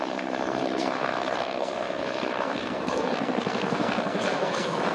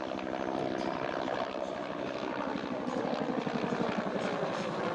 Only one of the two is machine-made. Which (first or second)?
first